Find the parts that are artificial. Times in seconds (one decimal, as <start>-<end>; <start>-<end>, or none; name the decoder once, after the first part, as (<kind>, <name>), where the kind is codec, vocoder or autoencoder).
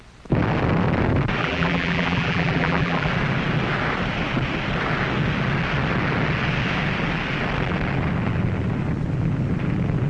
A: 1.4-3.1 (vocoder, BigVGAN v2)